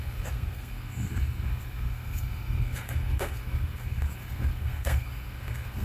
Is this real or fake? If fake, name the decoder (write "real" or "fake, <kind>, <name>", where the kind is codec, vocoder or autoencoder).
fake, codec, SNAC